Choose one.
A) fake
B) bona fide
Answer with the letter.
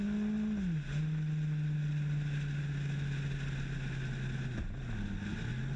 B